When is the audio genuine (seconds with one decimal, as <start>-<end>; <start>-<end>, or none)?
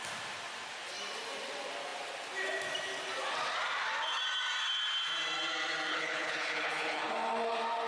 0.0-5.9; 7.1-7.9